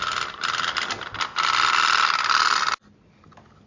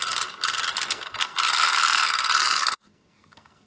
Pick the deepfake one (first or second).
second